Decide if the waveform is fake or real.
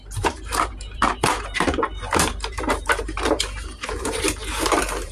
fake